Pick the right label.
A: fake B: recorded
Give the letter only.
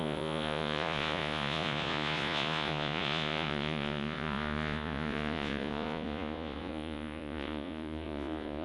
A